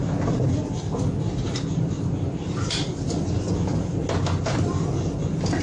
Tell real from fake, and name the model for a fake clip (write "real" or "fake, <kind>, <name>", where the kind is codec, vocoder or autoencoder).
real